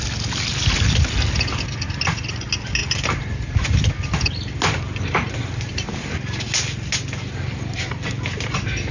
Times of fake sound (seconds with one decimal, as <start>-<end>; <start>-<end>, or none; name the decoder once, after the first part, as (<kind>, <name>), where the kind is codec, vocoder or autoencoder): none